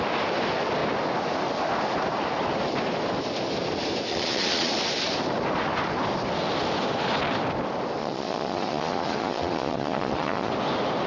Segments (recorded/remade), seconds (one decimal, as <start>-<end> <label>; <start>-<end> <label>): 0.0-4.1 recorded; 4.1-4.7 remade; 4.7-8.0 recorded; 8.0-10.5 remade; 10.5-11.1 recorded